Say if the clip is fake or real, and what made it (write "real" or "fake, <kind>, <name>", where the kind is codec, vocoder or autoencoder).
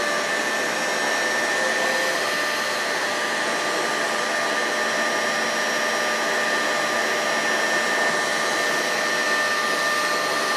real